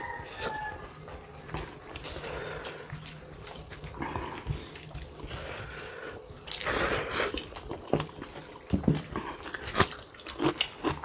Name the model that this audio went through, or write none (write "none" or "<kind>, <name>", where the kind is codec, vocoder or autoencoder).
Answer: none